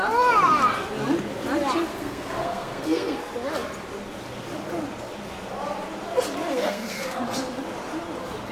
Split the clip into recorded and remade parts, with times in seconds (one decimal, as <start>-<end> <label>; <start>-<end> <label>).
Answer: 0.0-1.9 recorded; 1.9-3.2 remade; 3.2-6.5 recorded; 6.5-7.2 remade; 7.2-8.5 recorded